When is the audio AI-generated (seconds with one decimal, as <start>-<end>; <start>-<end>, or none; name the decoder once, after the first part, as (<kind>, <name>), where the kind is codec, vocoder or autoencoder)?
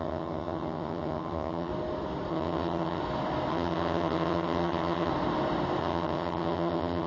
0.0-1.7 (vocoder, HiFi-GAN); 2.3-3.0; 3.5-5.1; 5.8-7.1